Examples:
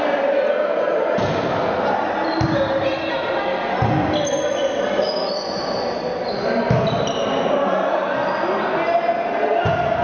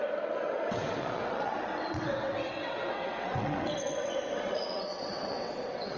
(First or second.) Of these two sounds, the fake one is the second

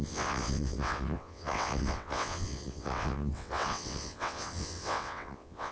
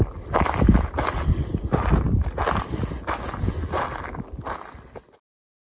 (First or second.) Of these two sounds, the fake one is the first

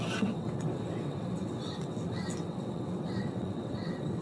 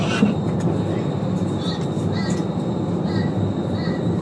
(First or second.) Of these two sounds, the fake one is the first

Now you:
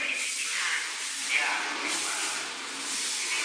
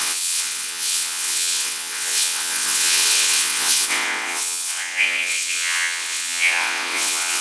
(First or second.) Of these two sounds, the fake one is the second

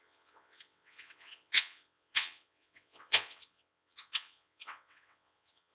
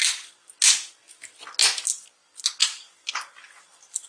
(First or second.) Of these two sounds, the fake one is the first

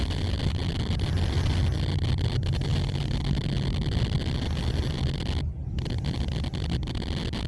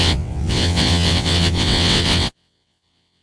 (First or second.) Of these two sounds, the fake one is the second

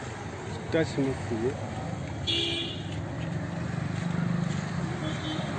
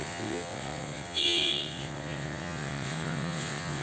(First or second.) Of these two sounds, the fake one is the second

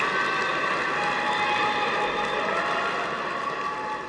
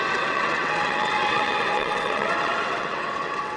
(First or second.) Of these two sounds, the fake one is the second